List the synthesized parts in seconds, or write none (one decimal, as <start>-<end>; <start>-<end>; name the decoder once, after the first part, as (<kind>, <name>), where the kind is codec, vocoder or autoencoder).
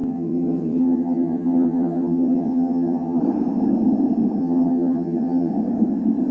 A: 0.0-3.2 (vocoder, HiFi-GAN); 4.4-5.5